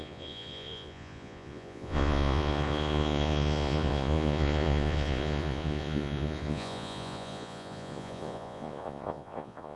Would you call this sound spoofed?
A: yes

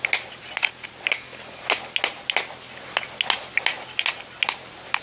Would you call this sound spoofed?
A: no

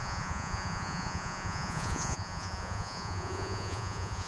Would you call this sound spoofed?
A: yes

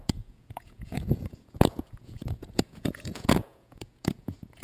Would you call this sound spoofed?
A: yes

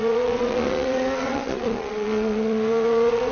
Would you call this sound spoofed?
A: yes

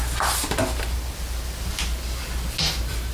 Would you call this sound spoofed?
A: no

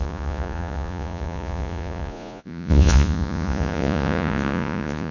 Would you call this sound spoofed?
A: yes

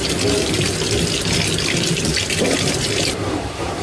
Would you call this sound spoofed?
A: no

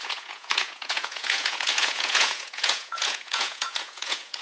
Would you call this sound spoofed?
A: yes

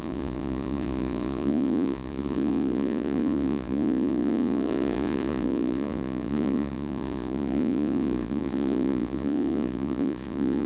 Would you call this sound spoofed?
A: yes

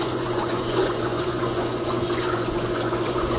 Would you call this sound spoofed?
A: yes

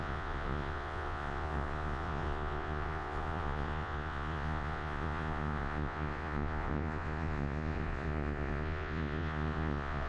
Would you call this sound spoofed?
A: yes